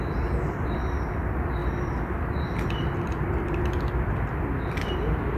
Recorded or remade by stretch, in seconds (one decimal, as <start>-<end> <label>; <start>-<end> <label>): 0.0-5.4 recorded